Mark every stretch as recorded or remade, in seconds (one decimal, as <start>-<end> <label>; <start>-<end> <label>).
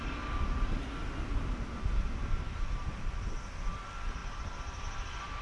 0.0-5.4 recorded